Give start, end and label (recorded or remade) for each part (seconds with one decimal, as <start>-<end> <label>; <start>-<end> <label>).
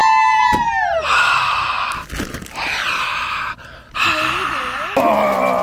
0.0-5.6 recorded